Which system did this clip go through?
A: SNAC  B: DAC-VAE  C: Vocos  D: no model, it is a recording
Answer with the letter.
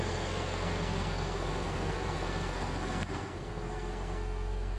A